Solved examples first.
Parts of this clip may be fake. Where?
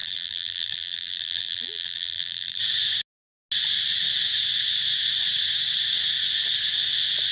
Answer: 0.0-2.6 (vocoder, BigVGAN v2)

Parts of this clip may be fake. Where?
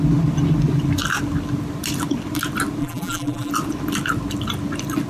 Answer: 2.8-3.5 (vocoder, BigVGAN v2)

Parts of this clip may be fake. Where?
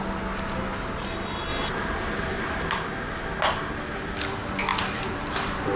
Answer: 1.5-2.7 (vocoder, BigVGAN v2)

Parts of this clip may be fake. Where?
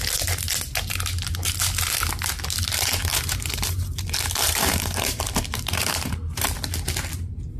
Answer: 3.1-6.4 (vocoder, BigVGAN v2)